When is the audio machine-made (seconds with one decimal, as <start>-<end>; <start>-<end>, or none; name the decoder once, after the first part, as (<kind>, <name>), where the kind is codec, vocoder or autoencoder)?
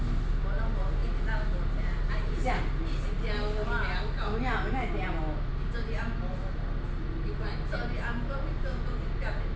none